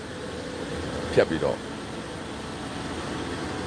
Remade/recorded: recorded